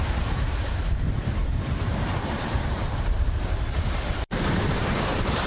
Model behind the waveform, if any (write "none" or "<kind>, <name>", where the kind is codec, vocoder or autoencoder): vocoder, BigVGAN v2